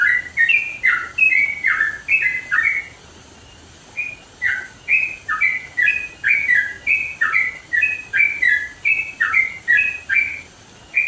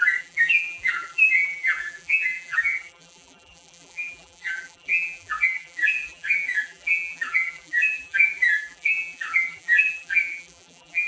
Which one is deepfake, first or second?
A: second